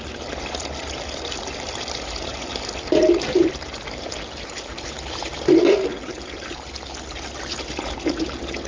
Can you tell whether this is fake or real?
real